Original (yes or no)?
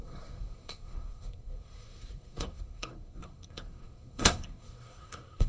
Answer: no